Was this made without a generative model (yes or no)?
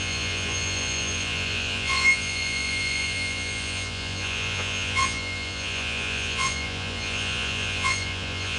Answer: no